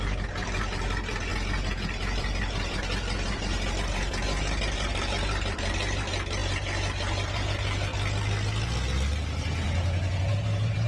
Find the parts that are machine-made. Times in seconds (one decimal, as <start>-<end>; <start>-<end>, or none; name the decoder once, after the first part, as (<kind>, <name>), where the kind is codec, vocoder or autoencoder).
0.0-7.9 (vocoder, BigVGAN v2); 9.4-10.9